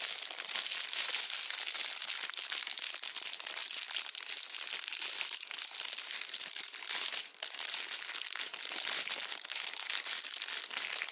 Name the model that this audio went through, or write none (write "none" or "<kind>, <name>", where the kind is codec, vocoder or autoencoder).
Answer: none